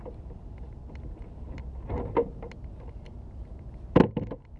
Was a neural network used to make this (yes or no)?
no